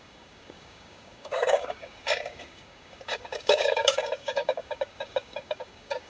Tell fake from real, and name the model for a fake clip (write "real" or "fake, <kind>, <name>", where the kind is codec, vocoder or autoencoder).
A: fake, codec, DAC